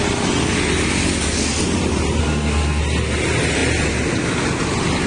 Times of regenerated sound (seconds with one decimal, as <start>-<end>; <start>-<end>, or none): 2.2-2.8